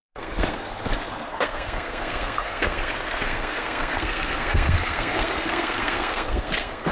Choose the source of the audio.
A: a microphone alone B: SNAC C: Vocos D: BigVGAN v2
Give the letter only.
B